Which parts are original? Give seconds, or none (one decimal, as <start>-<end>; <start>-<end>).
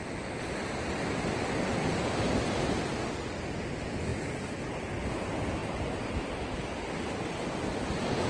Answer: 0.0-8.3